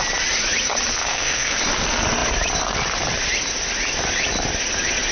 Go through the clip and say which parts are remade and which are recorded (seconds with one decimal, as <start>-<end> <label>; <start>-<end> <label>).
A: 0.0-0.9 recorded; 0.9-1.6 remade; 1.6-5.1 recorded